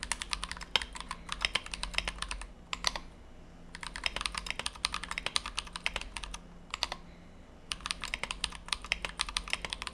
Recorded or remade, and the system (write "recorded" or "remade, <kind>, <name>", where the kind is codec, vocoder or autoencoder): recorded